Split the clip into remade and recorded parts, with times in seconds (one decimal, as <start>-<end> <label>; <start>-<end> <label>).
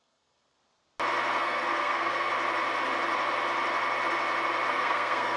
0.0-0.6 remade; 0.6-1.4 recorded; 1.4-2.3 remade; 2.3-4.7 recorded; 4.7-5.4 remade